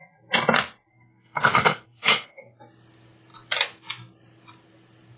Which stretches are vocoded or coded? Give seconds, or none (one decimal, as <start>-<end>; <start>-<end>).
0.9-2.6